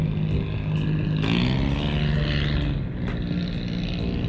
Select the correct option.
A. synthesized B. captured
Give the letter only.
B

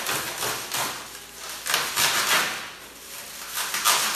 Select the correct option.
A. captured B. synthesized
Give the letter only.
A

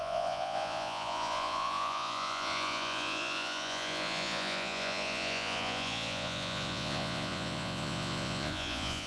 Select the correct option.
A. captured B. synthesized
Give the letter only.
B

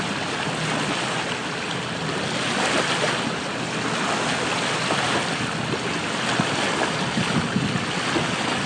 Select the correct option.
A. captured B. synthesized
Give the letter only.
A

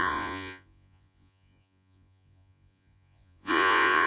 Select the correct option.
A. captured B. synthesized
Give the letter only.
B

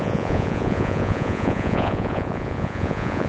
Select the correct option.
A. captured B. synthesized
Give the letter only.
B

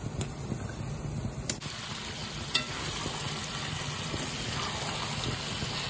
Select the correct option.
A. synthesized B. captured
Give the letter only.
B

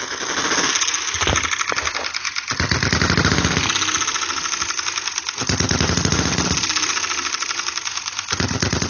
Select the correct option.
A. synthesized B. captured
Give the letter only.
B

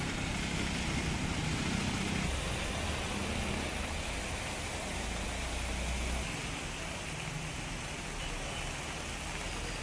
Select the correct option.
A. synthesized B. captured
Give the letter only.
B